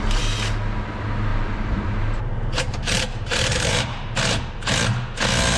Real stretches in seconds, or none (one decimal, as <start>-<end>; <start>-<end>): 0.0-1.3; 4.4-5.6